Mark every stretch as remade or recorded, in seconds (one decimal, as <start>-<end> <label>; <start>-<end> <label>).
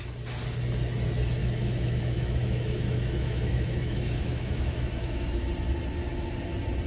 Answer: 0.0-1.4 recorded; 1.4-5.5 remade; 5.5-6.9 recorded